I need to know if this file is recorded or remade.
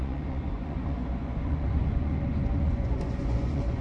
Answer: remade